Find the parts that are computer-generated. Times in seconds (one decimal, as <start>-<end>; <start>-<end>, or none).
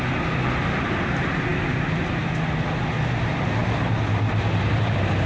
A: none